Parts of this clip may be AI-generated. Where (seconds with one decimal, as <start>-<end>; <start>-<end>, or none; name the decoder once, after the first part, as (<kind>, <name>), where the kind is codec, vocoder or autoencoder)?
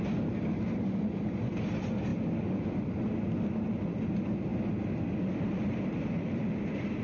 none